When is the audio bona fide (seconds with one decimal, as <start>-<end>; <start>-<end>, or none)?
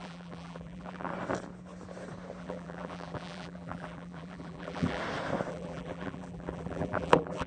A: 1.1-2.4; 5.0-5.5